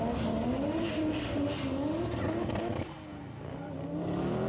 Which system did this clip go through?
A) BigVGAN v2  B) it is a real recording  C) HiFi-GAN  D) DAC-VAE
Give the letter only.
B